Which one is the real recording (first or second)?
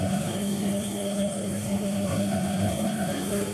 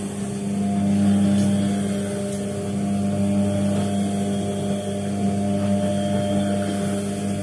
second